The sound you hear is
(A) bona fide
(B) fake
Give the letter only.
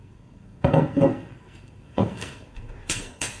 B